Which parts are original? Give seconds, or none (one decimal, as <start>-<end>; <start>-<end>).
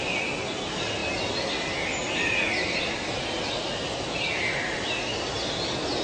0.0-6.0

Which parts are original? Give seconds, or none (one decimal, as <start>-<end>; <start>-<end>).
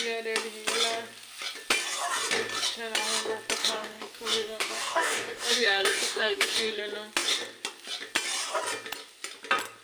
0.0-3.6; 6.8-9.8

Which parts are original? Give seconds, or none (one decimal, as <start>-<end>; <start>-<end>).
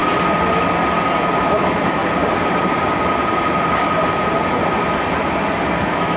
0.0-1.4; 2.0-5.7